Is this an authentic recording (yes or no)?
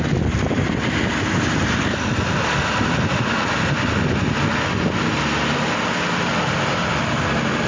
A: yes